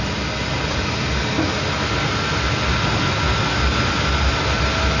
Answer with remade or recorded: recorded